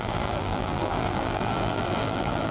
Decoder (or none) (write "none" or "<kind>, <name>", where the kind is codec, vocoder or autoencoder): vocoder, BigVGAN v2